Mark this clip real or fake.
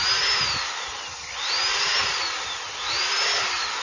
real